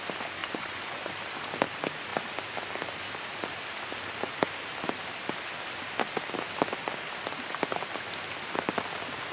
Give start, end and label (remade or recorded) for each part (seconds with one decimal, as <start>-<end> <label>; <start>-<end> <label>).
0.0-0.4 recorded; 0.4-1.1 remade; 1.1-9.3 recorded